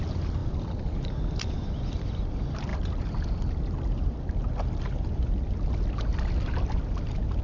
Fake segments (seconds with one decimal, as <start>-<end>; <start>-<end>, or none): 0.4-2.0